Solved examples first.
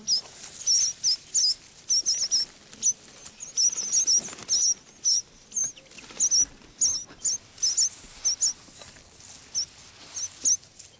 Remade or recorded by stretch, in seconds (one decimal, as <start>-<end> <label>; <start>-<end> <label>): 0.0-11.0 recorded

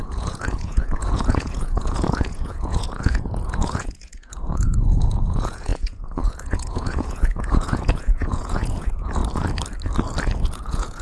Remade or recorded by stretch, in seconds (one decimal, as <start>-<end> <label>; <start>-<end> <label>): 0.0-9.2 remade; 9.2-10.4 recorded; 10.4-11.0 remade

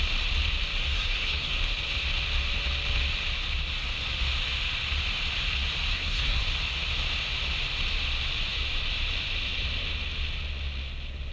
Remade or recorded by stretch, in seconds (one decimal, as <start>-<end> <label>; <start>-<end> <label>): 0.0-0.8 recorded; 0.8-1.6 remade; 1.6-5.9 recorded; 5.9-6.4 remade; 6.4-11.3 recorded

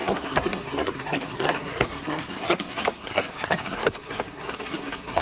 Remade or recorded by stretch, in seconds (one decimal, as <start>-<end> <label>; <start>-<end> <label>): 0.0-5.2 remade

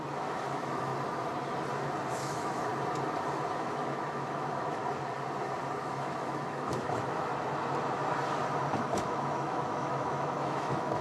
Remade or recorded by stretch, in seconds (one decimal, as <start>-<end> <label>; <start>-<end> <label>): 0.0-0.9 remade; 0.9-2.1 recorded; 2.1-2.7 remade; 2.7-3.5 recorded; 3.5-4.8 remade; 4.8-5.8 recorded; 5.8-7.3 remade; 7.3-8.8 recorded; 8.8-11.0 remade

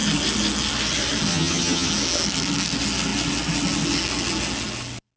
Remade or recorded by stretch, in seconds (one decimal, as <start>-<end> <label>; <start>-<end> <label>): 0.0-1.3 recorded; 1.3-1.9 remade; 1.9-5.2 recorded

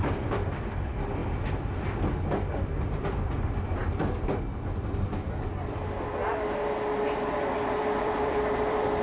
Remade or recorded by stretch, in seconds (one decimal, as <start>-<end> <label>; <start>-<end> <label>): 0.0-1.2 remade; 1.2-2.5 recorded; 2.5-3.8 remade; 3.8-8.0 recorded; 8.0-9.0 remade

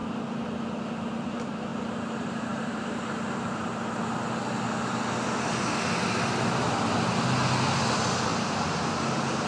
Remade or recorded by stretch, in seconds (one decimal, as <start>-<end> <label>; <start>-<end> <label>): 0.0-0.8 recorded; 0.8-3.7 remade; 3.7-7.9 recorded; 7.9-9.5 remade